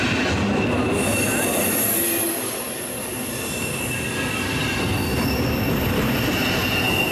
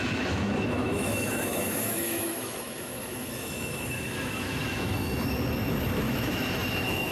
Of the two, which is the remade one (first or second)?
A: second